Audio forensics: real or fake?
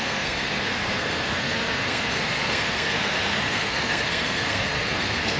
fake